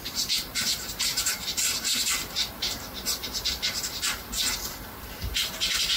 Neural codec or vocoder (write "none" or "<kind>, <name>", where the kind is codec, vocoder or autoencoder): vocoder, BigVGAN v2